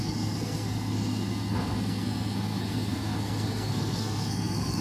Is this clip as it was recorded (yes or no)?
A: no